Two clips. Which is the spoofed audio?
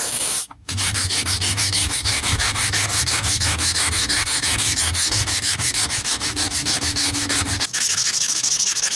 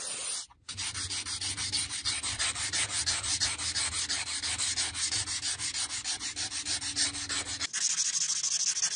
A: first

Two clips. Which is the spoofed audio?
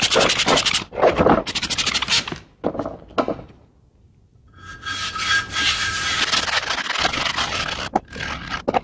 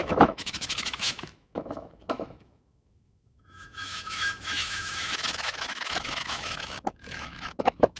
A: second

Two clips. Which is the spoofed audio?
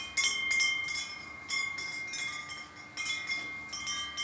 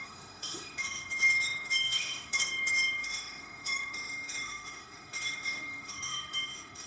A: second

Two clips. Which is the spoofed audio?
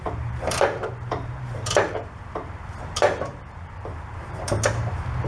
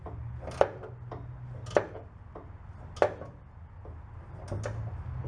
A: first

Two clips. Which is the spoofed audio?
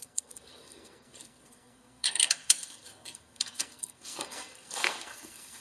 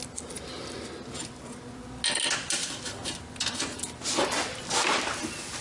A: first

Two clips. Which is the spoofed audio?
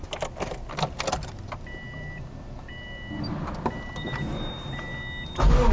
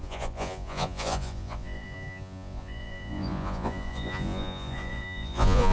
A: second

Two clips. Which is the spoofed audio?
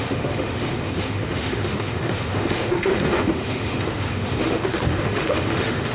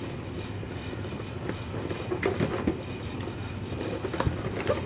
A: first